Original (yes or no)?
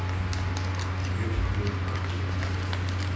yes